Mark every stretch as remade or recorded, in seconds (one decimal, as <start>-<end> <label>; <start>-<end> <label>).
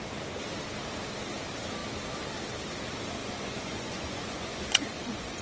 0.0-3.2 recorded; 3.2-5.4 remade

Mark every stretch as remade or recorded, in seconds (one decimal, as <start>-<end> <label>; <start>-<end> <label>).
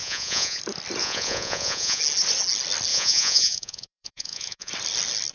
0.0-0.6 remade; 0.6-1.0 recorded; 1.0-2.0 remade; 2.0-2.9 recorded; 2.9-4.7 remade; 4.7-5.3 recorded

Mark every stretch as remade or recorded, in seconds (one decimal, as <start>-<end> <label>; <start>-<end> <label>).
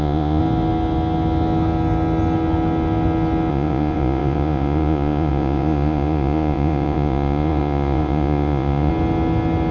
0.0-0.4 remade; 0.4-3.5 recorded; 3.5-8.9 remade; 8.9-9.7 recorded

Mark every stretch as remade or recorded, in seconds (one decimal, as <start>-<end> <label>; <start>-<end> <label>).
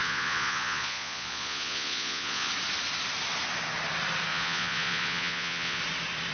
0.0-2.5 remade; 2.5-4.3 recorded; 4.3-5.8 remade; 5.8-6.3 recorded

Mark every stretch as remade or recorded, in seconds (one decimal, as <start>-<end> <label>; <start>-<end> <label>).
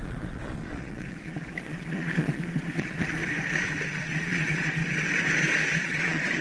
0.0-3.2 remade; 3.2-4.1 recorded; 4.1-4.8 remade; 4.8-5.8 recorded; 5.8-6.4 remade